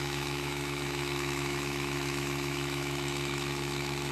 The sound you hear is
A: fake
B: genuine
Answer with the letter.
A